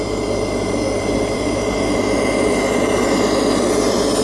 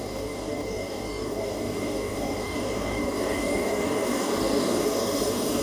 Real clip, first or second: first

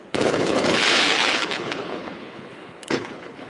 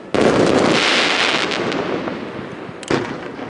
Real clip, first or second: second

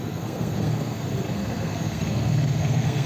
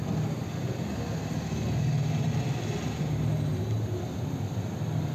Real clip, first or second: second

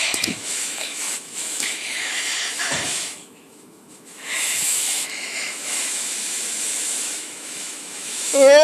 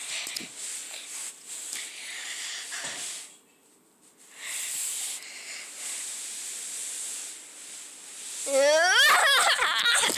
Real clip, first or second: second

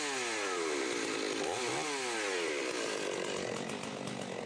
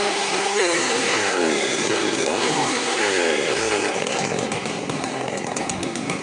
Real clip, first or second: first